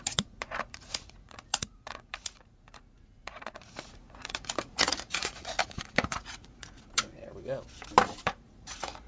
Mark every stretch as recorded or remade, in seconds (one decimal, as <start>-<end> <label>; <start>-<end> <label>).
0.0-7.1 remade; 7.1-8.2 recorded; 8.2-9.1 remade